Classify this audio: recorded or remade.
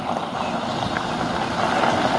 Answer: recorded